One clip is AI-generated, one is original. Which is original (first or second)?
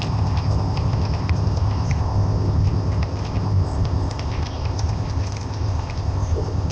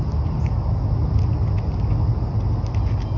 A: second